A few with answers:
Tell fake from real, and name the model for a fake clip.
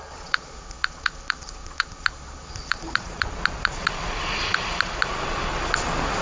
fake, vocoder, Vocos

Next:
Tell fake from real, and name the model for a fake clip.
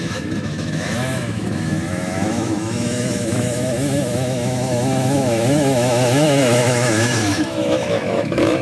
fake, autoencoder, DAC-VAE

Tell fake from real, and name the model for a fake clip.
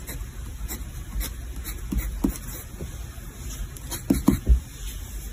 real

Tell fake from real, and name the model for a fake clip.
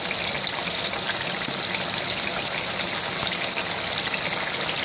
real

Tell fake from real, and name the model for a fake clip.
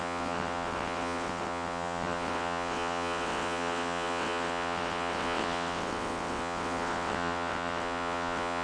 fake, vocoder, WaveNeXt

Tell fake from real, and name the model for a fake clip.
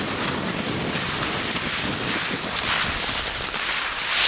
real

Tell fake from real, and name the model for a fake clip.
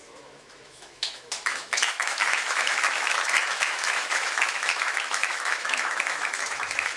fake, autoencoder, DAC-VAE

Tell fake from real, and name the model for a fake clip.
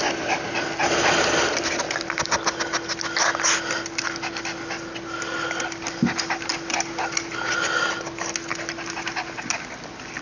real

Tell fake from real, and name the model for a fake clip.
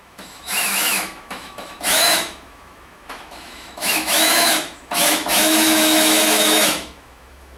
fake, autoencoder, DAC-VAE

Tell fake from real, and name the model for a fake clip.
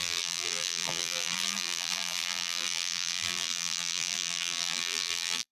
fake, vocoder, BigVGAN v2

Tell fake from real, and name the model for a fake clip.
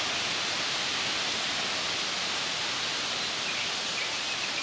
real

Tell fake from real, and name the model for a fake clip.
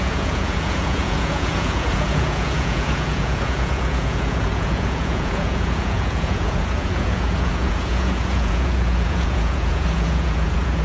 fake, vocoder, Vocos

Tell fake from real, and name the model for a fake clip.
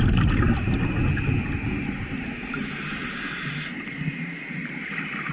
real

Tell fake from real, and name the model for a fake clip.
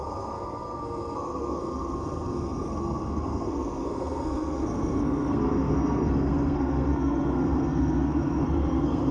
fake, codec, SNAC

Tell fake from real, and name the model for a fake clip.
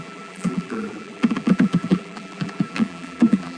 fake, vocoder, BigVGAN v2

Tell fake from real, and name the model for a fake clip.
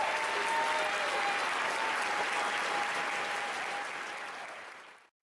real